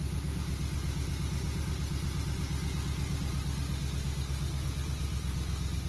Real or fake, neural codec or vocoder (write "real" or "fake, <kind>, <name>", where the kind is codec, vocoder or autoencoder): real